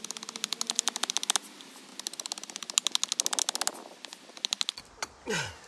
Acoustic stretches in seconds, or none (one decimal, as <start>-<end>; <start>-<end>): 0.0-5.7